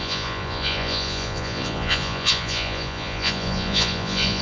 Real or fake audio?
fake